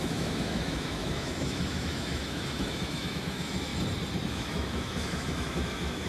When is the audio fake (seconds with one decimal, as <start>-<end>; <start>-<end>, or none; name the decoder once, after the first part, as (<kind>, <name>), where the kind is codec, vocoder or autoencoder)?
0.0-3.7 (autoencoder, DAC-VAE); 4.3-6.1

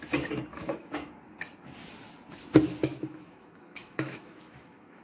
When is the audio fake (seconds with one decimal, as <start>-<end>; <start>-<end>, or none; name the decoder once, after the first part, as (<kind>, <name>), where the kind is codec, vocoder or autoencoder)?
0.5-1.1 (autoencoder, DAC-VAE); 2.9-5.0